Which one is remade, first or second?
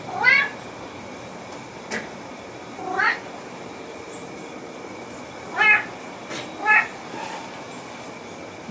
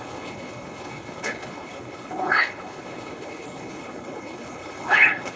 second